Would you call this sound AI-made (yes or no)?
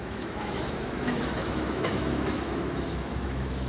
yes